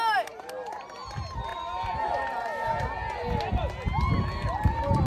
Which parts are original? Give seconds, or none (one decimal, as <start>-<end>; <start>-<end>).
0.0-5.1